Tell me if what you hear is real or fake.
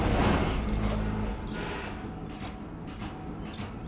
real